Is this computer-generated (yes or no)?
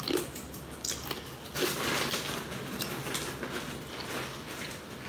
no